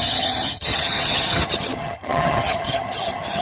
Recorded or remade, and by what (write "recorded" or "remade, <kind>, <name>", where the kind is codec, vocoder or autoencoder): remade, vocoder, HiFi-GAN